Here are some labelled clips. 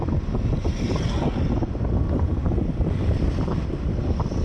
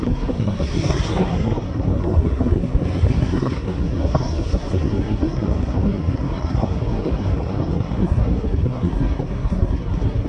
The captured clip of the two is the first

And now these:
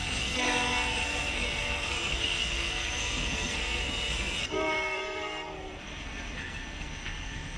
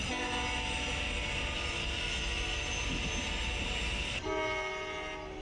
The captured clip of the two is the second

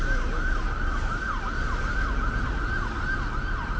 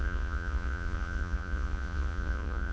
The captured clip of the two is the first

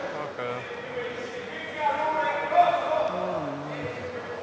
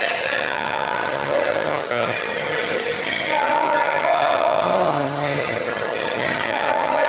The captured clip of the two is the first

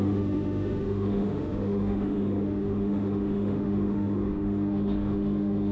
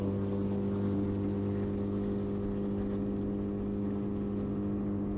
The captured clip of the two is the second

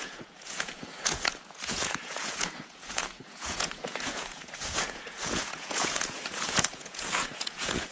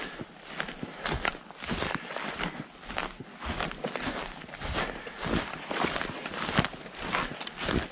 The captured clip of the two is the second